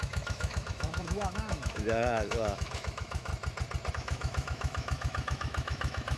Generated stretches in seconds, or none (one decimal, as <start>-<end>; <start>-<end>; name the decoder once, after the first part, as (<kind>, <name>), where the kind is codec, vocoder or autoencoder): 0.0-3.3 (autoencoder, DAC-VAE); 3.9-6.2